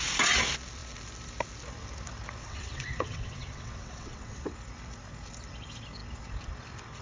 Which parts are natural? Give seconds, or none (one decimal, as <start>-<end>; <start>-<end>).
0.0-2.4; 4.5-7.0